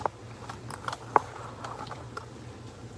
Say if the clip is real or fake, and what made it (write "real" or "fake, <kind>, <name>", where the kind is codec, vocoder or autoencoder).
real